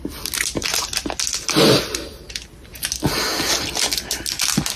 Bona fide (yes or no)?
yes